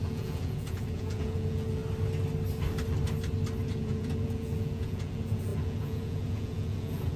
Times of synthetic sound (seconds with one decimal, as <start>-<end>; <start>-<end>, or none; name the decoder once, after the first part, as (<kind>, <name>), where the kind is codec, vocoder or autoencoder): 0.0-1.8 (vocoder, Vocos); 3.7-7.2